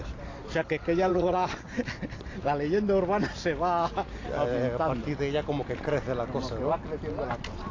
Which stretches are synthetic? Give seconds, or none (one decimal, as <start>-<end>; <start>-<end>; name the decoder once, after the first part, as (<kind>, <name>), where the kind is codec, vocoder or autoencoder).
1.1-1.7 (vocoder, HiFi-GAN)